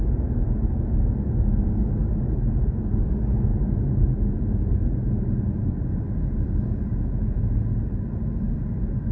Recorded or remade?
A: recorded